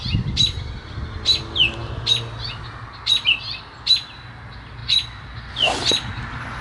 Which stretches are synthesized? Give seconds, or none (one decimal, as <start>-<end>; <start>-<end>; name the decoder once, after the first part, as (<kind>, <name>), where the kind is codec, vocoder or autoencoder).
none

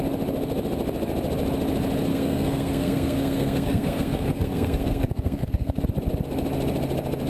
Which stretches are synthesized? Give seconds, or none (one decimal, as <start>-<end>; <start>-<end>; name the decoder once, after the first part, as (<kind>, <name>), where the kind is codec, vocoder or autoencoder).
2.1-5.8 (codec, SNAC)

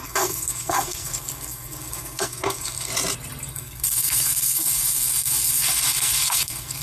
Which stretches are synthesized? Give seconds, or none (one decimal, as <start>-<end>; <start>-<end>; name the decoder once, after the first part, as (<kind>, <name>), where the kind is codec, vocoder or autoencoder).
0.0-2.9 (codec, SNAC); 3.5-6.8

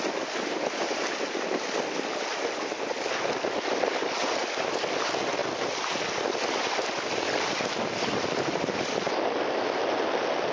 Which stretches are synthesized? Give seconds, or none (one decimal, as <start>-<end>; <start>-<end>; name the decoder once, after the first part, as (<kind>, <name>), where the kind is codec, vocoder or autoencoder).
none

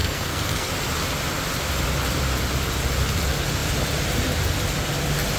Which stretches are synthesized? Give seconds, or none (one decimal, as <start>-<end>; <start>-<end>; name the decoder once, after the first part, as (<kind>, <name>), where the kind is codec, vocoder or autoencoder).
0.0-0.7 (codec, SNAC)

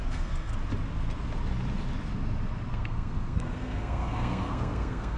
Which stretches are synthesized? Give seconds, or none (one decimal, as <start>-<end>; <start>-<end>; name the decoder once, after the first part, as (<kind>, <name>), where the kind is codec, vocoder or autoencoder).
0.0-0.5 (codec, SNAC); 2.7-5.2